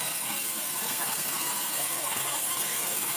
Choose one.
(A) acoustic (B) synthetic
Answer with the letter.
B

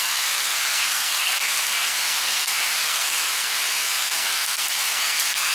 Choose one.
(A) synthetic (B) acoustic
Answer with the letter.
A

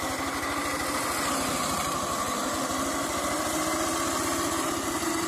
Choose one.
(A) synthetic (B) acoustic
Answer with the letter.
B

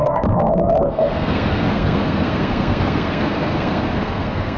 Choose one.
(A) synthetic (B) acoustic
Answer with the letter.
A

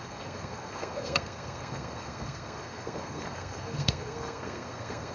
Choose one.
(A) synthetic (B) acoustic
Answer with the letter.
A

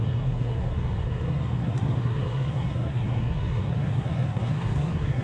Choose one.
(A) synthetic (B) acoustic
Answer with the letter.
A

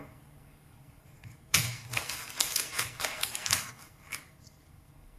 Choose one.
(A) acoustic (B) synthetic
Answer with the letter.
B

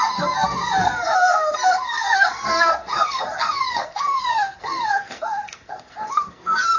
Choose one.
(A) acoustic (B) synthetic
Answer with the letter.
B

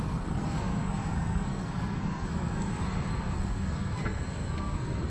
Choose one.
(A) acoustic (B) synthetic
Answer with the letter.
B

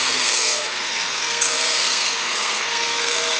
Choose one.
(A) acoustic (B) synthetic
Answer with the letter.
B